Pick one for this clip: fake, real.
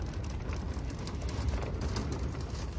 real